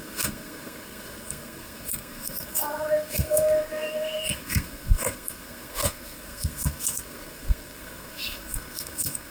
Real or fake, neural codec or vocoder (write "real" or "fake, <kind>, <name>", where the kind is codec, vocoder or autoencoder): fake, codec, SNAC